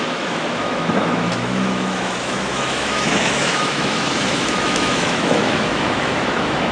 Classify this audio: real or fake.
fake